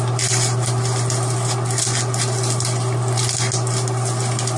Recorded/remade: recorded